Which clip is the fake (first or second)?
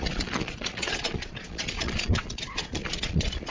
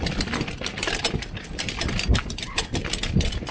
first